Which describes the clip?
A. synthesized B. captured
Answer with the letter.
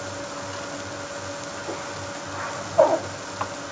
B